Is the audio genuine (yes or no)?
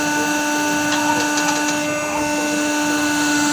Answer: yes